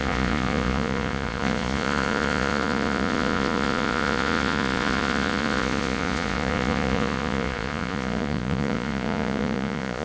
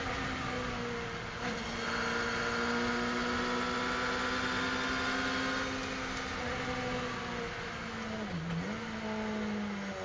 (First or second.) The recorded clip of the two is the second